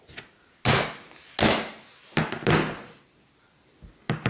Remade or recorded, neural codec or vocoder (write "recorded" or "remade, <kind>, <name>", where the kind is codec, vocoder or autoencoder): recorded